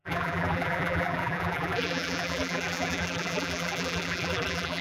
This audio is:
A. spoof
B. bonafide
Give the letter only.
A